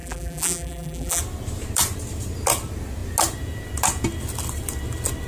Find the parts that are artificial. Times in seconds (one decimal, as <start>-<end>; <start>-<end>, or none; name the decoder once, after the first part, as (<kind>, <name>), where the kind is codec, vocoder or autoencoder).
0.0-1.2 (vocoder, BigVGAN v2)